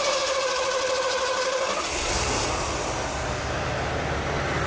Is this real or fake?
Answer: real